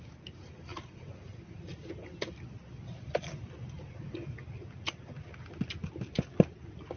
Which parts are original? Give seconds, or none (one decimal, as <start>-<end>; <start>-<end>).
0.0-7.0